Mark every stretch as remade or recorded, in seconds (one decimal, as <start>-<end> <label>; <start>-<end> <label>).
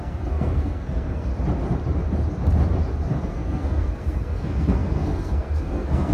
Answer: 0.0-1.3 remade; 1.3-3.2 recorded; 3.2-6.1 remade